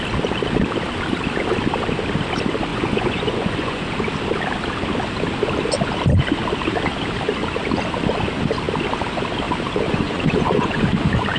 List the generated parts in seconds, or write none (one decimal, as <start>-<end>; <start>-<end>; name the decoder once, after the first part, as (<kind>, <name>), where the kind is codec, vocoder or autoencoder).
2.7-3.9 (vocoder, Vocos); 9.9-10.9